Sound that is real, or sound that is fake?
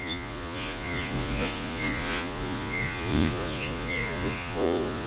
fake